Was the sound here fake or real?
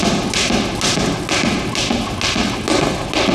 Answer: real